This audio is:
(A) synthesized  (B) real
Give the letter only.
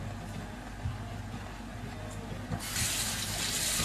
B